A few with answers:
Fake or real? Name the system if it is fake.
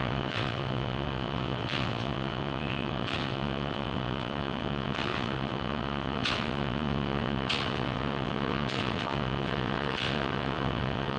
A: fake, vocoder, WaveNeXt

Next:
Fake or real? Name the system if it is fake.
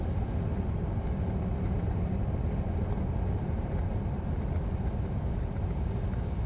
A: real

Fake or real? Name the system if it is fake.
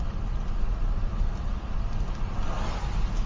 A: real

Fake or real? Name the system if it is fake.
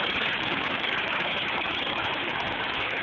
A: fake, codec, DAC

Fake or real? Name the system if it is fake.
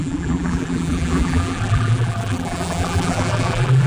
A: fake, vocoder, BigVGAN v2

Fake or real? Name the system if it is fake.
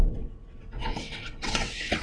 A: fake, vocoder, WaveNeXt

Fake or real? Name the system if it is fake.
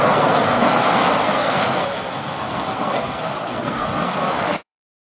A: fake, codec, SNAC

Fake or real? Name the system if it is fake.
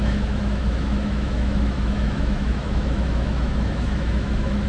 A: fake, autoencoder, DAC-VAE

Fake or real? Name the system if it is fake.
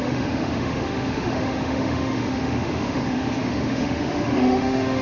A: fake, autoencoder, DAC-VAE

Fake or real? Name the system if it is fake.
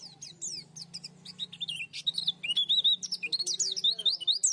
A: real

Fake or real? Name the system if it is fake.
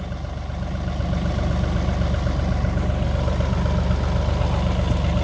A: real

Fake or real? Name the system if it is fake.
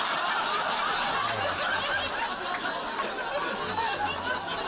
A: real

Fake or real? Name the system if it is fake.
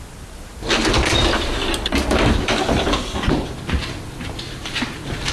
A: real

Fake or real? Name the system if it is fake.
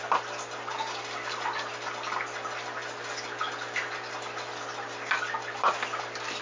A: real